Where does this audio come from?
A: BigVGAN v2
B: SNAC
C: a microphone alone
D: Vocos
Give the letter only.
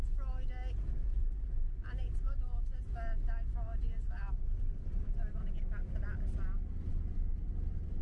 C